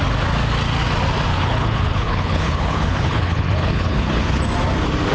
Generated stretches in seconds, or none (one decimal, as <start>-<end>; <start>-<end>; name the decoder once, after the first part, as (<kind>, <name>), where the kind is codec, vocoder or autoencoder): 1.3-4.4 (codec, HILCodec)